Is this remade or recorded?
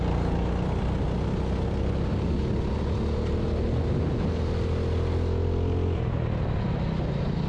recorded